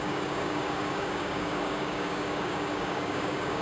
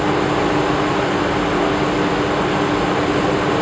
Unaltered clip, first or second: second